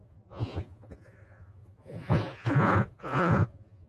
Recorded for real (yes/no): no